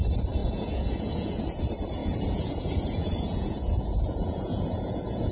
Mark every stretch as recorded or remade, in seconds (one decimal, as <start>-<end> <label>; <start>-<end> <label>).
0.0-0.4 recorded; 0.4-1.6 remade; 1.6-2.0 recorded; 2.0-5.3 remade